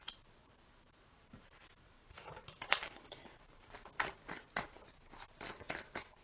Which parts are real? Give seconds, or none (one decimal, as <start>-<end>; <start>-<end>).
0.0-0.4; 4.1-6.2